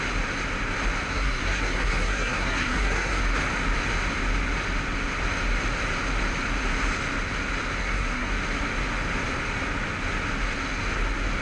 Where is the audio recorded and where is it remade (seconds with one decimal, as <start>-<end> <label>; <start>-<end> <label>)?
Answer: 0.0-1.1 recorded; 1.1-3.2 remade; 3.2-7.8 recorded; 7.8-8.3 remade; 8.3-11.4 recorded